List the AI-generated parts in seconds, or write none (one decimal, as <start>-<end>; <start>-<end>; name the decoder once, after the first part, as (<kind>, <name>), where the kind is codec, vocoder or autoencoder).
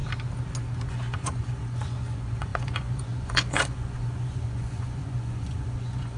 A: 0.9-6.2 (vocoder, Vocos)